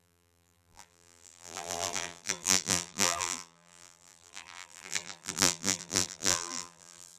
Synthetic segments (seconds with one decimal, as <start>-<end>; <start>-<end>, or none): 0.0-7.2

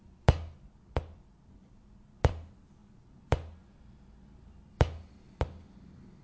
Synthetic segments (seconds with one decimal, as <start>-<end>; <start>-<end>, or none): none